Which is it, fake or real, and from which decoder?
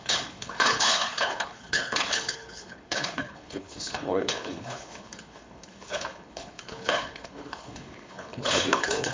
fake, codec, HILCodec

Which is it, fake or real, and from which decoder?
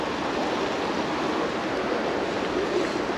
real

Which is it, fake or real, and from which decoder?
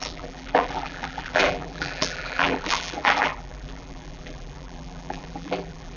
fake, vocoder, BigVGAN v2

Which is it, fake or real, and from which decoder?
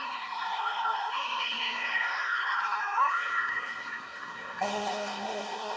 fake, codec, SNAC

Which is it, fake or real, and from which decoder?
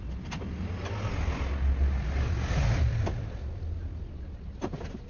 real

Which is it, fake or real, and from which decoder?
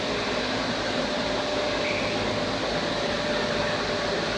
real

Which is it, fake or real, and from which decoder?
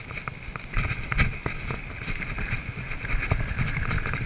real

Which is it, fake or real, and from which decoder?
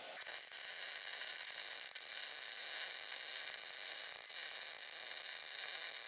real